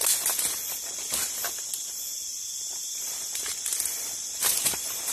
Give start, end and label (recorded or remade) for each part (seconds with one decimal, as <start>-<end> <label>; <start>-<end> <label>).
0.0-3.7 recorded; 3.7-5.1 remade